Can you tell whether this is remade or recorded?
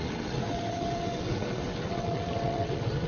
remade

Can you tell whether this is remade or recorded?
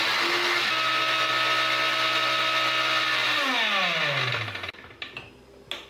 recorded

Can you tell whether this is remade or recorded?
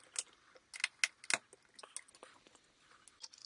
recorded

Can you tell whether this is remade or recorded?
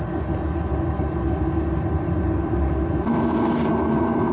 recorded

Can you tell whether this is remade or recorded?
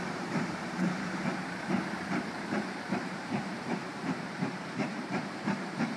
remade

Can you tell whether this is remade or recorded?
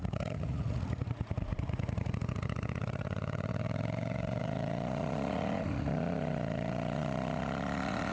remade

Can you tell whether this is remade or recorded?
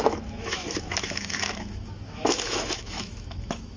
remade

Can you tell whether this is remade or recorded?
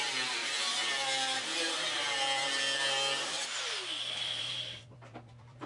remade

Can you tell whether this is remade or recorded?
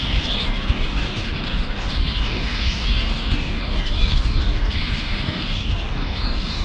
remade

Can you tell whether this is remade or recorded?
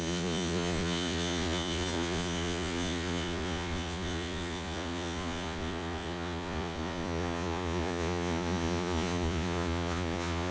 remade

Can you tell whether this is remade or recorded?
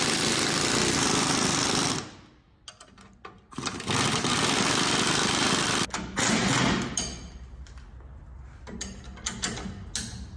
recorded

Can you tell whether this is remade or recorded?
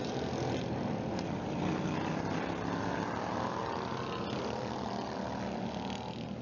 recorded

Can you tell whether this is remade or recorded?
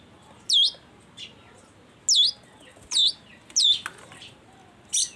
recorded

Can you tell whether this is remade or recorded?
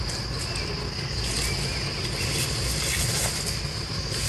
recorded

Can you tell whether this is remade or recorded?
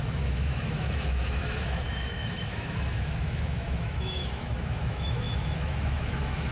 remade